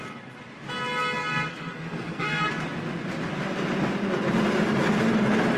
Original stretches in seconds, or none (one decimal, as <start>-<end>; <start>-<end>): 0.0-1.5; 2.5-5.6